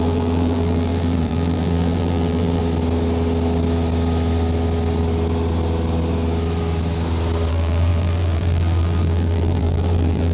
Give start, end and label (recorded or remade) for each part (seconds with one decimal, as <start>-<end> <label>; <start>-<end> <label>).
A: 0.0-2.6 remade; 2.6-7.5 recorded; 7.5-10.3 remade